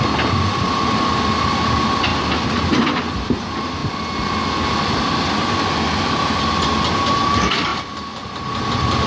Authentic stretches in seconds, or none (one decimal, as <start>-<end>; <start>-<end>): 0.0-9.1